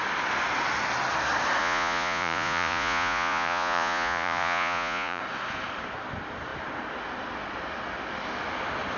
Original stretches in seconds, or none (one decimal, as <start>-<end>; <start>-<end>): 0.0-1.6; 5.2-9.0